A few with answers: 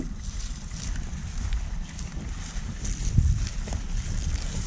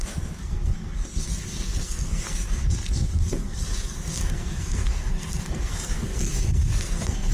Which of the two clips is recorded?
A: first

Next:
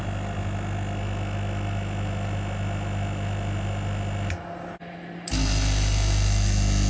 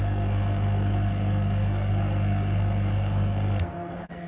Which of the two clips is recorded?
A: first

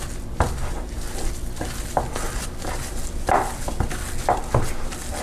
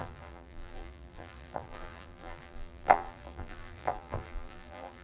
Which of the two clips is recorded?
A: first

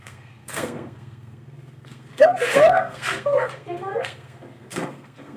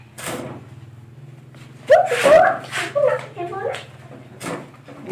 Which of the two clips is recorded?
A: second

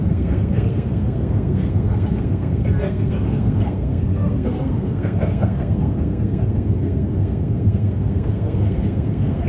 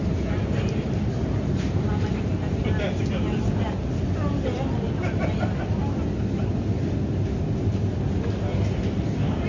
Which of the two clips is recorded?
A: second